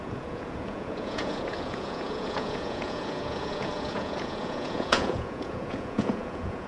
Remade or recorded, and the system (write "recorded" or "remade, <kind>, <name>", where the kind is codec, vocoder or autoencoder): remade, vocoder, Vocos